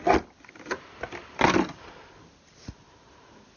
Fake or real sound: real